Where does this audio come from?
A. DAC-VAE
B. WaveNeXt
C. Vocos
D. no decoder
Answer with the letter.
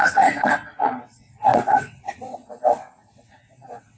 B